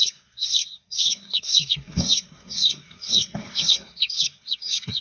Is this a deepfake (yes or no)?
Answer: yes